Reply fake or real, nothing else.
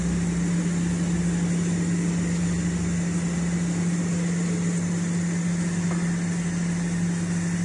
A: real